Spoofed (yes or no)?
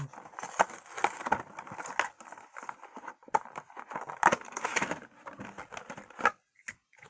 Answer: no